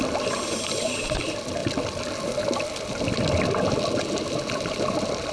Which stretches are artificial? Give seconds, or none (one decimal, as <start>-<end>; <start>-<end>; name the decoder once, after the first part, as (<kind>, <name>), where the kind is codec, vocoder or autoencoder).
none

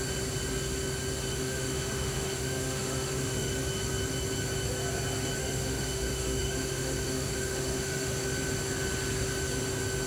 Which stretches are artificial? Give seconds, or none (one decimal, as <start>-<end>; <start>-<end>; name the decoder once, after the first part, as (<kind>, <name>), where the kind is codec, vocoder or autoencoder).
1.3-3.5 (autoencoder, DAC-VAE); 5.4-8.1

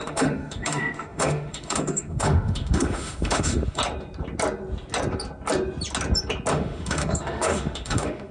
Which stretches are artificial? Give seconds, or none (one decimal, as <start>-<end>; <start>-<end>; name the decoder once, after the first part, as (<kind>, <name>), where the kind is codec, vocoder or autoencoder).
0.0-3.8 (autoencoder, DAC-VAE); 6.5-8.3

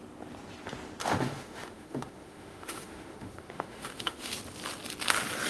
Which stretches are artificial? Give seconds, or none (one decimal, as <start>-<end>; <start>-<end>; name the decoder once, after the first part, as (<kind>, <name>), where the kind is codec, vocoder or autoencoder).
1.0-4.3 (autoencoder, DAC-VAE)

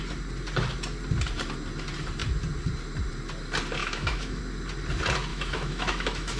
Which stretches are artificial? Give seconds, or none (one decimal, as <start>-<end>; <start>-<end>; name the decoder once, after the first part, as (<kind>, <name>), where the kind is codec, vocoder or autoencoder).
3.8-4.4 (autoencoder, DAC-VAE); 5.3-6.4

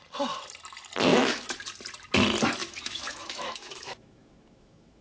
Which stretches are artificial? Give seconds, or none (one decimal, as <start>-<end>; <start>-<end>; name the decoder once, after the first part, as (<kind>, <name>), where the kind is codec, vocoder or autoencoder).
1.1-1.6 (autoencoder, DAC-VAE); 2.6-5.0